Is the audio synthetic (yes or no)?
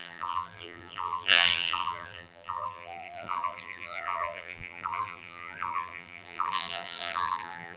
yes